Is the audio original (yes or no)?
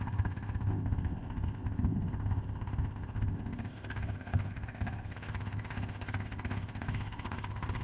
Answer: no